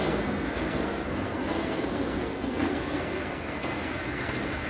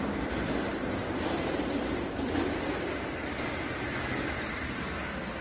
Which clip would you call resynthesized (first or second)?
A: first